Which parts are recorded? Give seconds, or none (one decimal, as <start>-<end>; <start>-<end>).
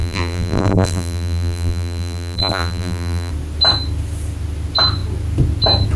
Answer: 3.3-6.0